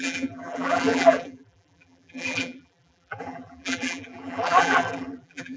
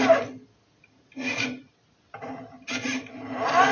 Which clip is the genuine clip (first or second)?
second